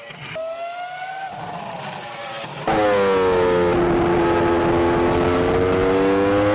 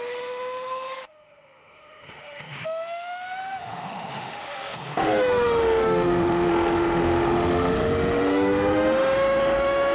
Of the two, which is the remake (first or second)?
second